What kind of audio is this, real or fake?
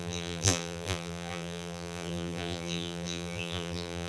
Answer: fake